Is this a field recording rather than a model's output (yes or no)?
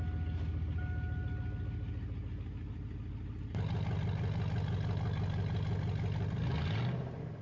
yes